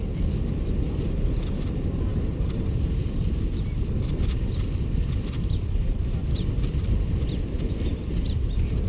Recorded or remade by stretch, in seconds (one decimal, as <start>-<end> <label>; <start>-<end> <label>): 0.0-8.9 recorded